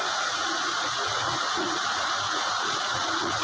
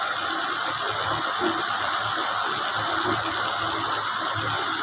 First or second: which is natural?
second